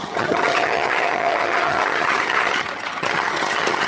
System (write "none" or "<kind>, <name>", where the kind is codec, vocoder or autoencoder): vocoder, HiFi-GAN